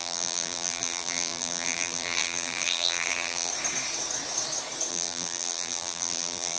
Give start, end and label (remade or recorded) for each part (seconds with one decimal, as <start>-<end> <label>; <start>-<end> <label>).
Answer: 0.0-3.5 remade; 3.5-4.9 recorded; 4.9-6.6 remade